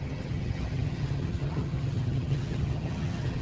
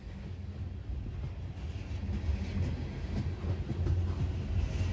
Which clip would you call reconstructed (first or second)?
first